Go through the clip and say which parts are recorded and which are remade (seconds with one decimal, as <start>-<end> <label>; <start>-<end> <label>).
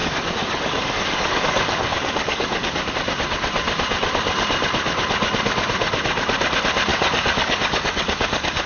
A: 0.0-2.9 remade; 2.9-6.9 recorded; 6.9-8.7 remade